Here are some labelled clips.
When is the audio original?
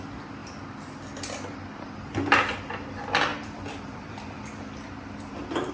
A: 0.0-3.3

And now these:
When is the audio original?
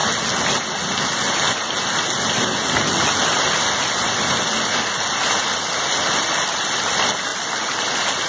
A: 0.0-8.3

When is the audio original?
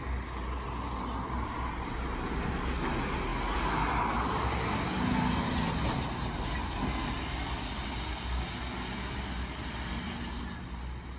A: 0.0-11.2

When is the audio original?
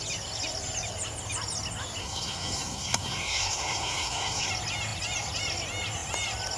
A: 0.0-2.0; 4.5-6.6